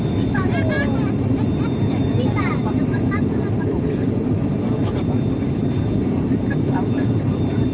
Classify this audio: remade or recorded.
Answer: remade